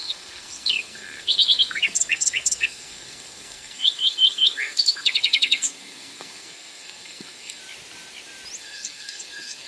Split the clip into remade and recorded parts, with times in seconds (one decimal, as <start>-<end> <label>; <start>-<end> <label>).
0.0-7.6 remade; 7.6-8.6 recorded; 8.6-9.7 remade